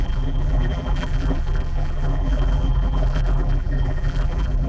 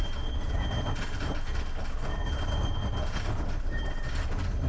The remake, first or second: first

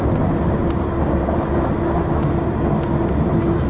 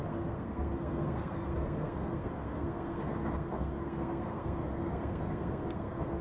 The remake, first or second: second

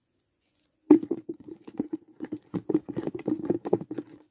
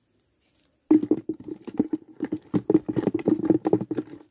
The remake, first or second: first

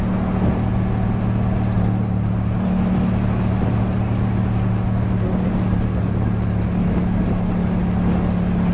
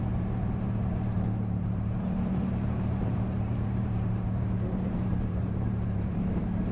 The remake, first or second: second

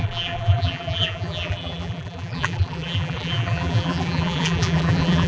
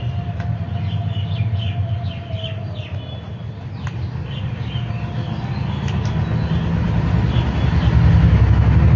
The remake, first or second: first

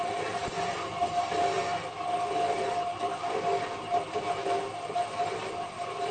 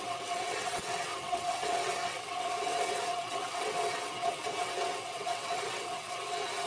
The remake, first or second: second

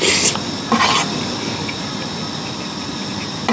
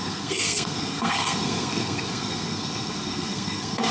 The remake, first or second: second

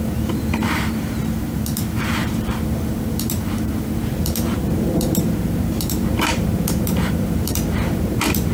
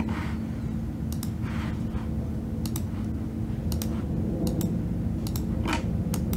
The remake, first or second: first